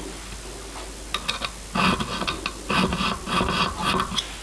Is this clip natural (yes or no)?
yes